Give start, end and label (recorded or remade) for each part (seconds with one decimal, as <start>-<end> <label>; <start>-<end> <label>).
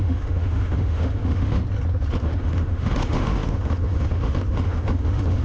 0.0-1.6 remade; 1.6-2.2 recorded; 2.2-5.4 remade